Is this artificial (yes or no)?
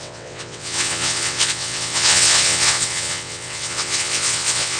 yes